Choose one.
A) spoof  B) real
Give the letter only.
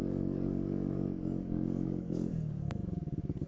A